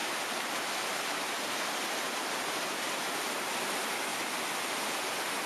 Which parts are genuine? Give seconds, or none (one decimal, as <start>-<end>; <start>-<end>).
0.0-5.5